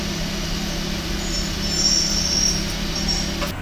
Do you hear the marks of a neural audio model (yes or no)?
no